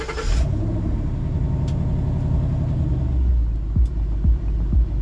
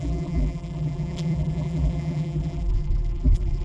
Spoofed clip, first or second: second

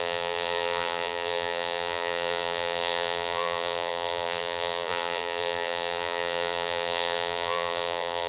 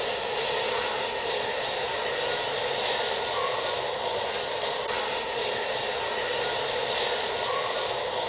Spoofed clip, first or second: first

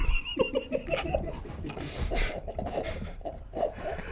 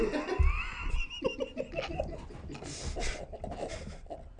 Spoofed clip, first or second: first